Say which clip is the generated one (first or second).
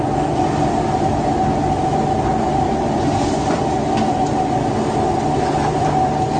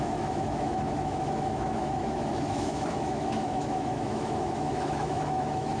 second